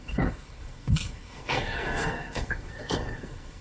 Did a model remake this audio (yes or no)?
yes